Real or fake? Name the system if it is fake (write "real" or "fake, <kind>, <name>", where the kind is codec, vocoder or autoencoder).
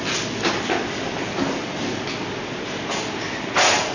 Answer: real